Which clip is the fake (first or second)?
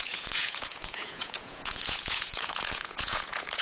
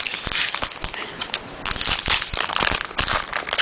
first